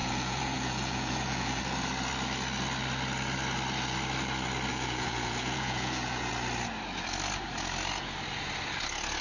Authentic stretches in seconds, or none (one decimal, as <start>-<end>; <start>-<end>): 1.6-4.7; 6.3-9.2